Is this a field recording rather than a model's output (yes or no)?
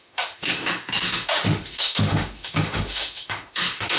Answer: no